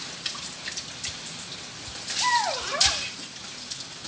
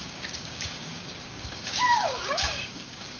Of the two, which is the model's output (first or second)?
second